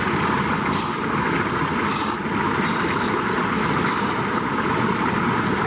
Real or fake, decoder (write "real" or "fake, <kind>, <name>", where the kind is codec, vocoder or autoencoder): real